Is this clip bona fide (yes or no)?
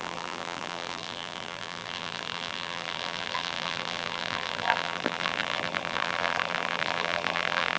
no